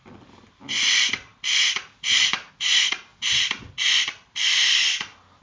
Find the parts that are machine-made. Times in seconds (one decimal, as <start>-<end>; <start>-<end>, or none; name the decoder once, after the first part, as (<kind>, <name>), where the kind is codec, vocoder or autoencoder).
1.3-2.5 (vocoder, BigVGAN v2); 3.1-5.4